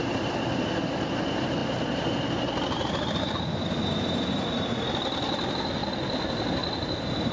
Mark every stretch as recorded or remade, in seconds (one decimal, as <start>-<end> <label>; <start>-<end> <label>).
0.0-7.3 recorded

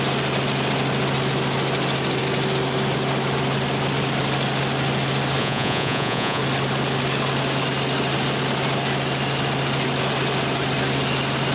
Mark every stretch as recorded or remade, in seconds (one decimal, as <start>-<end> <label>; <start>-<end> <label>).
0.0-5.4 recorded; 5.4-6.4 remade; 6.4-11.5 recorded